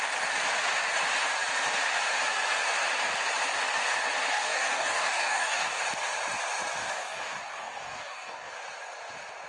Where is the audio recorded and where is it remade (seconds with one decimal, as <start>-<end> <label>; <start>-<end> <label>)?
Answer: 0.0-4.3 recorded; 4.3-5.8 remade; 5.8-6.8 recorded; 6.8-8.5 remade; 8.5-9.5 recorded